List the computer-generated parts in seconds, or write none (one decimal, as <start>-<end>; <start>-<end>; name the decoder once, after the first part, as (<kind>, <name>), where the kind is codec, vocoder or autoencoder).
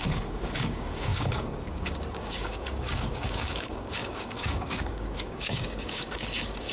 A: 0.0-6.7 (codec, DAC)